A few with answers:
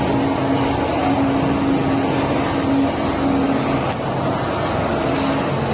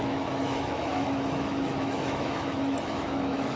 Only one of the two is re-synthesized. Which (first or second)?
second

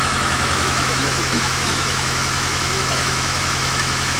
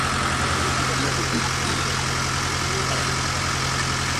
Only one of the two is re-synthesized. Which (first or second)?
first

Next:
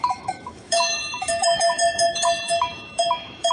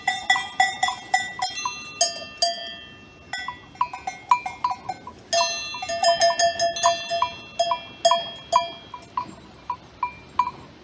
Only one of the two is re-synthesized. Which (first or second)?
first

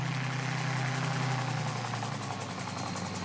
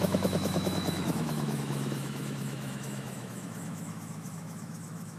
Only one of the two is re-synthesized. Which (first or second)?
second